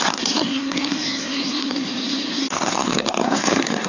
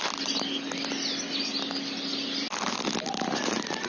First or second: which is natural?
second